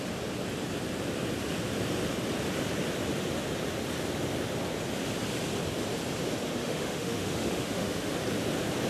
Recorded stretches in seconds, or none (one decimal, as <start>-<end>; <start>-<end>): 0.0-6.6; 8.1-8.9